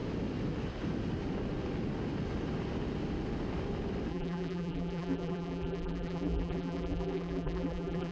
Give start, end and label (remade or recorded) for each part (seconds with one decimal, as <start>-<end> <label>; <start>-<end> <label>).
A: 0.0-4.1 recorded; 4.1-8.1 remade